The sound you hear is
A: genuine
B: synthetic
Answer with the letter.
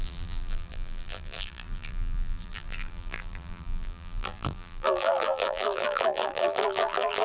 B